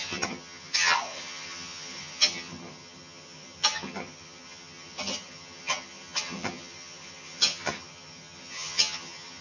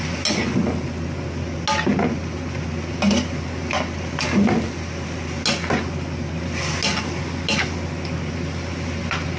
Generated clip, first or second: first